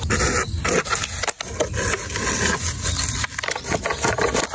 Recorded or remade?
recorded